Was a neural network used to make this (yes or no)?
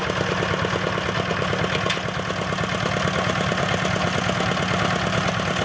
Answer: no